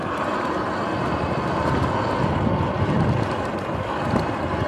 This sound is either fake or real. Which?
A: real